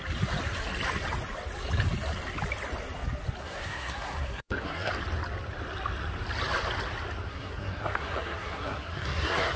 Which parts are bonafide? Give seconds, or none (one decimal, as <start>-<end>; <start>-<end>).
0.0-3.4; 4.9-7.3